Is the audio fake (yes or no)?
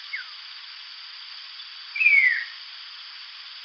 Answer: no